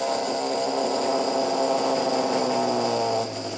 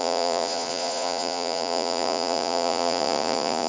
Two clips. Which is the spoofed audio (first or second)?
second